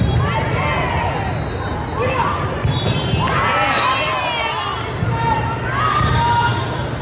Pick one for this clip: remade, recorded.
recorded